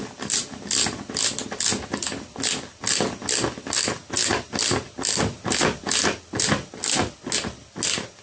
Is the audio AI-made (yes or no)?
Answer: no